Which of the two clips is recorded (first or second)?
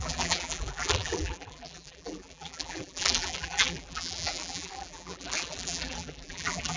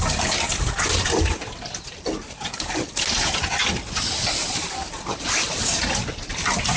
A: second